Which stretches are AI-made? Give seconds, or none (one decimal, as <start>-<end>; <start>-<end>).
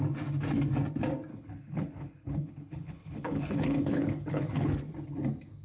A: 1.3-4.7